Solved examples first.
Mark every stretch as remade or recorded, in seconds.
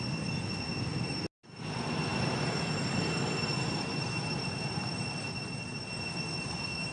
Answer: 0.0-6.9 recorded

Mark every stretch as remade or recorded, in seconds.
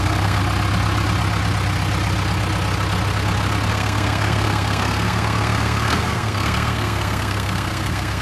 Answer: 0.0-0.4 remade; 0.4-3.7 recorded; 3.7-8.2 remade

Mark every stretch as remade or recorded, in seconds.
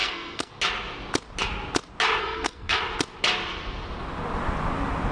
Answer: 0.0-0.5 remade; 0.5-2.2 recorded; 2.2-2.8 remade; 2.8-5.1 recorded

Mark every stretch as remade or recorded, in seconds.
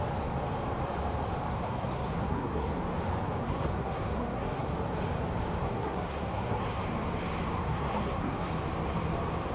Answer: 0.0-1.5 recorded; 1.5-2.8 remade; 2.8-3.4 recorded; 3.4-4.7 remade; 4.7-5.6 recorded; 5.6-6.8 remade; 6.8-7.6 recorded; 7.6-8.5 remade; 8.5-9.5 recorded